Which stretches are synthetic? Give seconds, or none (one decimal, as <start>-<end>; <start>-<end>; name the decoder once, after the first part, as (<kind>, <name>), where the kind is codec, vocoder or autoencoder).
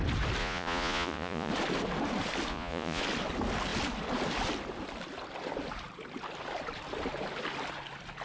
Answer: 0.4-1.5 (vocoder, Vocos); 2.5-3.0